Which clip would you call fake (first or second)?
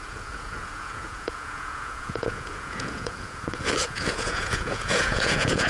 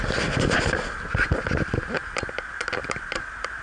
first